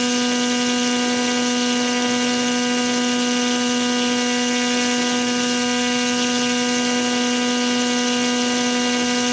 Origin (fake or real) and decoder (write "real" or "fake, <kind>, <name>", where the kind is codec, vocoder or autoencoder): real